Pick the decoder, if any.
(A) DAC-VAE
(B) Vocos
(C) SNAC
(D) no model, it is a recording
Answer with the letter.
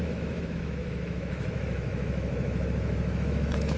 A